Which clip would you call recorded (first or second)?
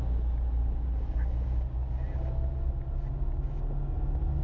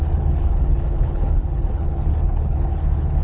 first